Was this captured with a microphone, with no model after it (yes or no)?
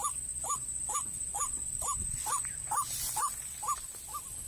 yes